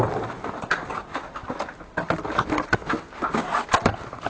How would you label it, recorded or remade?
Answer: recorded